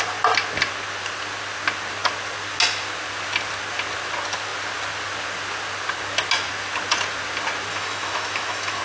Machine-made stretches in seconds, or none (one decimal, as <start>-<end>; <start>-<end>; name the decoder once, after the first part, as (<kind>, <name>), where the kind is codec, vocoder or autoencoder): 7.7-8.8 (autoencoder, DAC-VAE)